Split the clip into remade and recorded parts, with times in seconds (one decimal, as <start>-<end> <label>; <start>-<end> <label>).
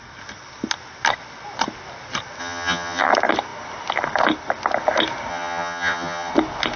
0.0-2.4 recorded; 2.4-3.1 remade; 3.1-5.3 recorded; 5.3-6.3 remade; 6.3-6.8 recorded